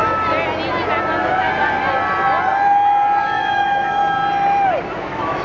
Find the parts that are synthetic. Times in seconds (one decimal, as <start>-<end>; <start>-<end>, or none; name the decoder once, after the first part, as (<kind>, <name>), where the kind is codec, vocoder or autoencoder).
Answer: 3.2-4.0 (autoencoder, DAC-VAE); 5.0-5.4